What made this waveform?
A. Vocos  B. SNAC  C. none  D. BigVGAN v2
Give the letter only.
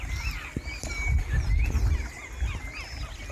C